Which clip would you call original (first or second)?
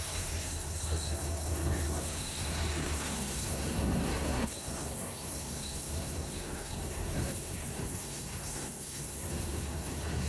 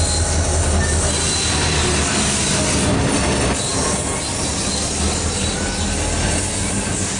second